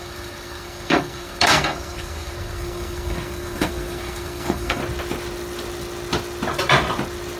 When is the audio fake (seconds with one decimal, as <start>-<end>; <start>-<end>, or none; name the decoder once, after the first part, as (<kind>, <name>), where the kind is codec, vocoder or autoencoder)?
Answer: 0.0-4.8 (codec, SNAC)